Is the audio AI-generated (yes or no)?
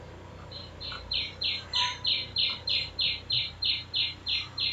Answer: yes